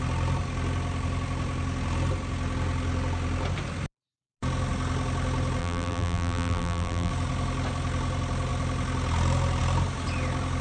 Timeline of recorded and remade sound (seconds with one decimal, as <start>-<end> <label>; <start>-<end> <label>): 0.0-5.6 recorded; 5.6-7.1 remade; 7.1-10.6 recorded